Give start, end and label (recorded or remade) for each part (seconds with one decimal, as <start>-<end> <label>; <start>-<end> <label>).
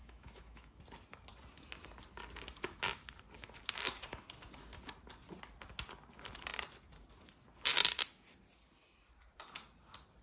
0.0-0.8 remade; 0.8-10.2 recorded